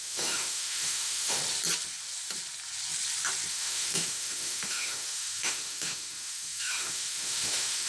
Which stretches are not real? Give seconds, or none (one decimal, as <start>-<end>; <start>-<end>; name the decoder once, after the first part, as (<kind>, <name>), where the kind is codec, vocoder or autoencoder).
0.0-1.4 (autoencoder, DAC-VAE); 3.5-7.9